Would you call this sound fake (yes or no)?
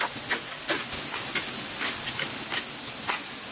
no